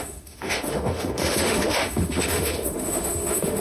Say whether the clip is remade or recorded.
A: remade